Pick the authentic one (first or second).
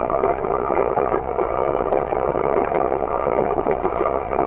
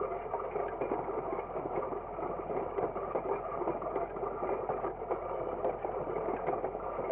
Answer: second